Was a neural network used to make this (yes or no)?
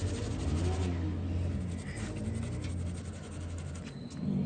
no